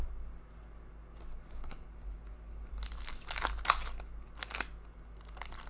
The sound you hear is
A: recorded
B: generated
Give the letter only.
A